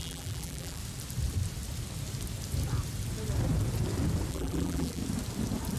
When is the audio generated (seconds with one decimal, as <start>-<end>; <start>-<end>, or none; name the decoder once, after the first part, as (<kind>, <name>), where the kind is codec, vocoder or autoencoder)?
0.0-0.8 (vocoder, BigVGAN v2); 4.3-5.0